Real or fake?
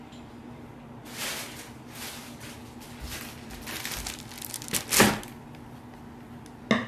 real